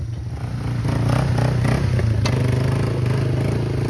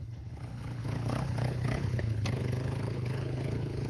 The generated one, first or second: second